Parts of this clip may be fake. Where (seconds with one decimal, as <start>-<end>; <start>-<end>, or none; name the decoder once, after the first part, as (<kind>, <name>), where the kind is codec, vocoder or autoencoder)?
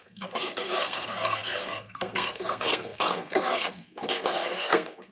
0.0-5.1 (codec, SNAC)